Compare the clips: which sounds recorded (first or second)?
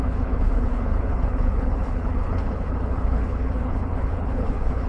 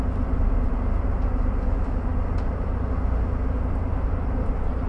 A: second